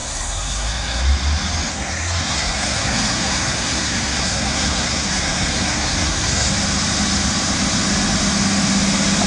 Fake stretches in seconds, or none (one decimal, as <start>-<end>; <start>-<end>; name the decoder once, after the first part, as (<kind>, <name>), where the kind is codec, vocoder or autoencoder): 0.0-1.0 (codec, SNAC); 1.7-6.5